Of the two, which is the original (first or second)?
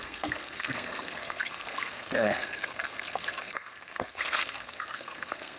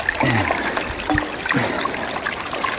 second